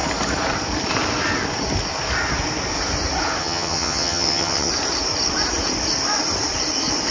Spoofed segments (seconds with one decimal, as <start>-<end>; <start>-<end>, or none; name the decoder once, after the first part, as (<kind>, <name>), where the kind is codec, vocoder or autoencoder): 3.4-4.7 (vocoder, HiFi-GAN)